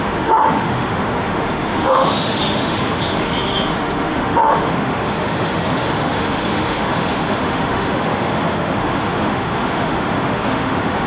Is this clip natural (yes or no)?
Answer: no